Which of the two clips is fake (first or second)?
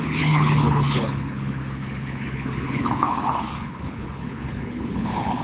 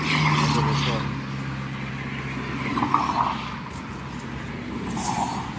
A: first